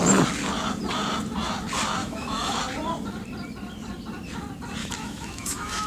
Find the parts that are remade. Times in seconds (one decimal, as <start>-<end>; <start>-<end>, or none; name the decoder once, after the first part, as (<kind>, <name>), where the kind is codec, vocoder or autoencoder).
2.0-2.6 (autoencoder, DAC-VAE); 4.8-5.9